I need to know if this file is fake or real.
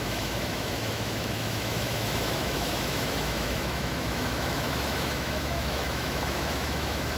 fake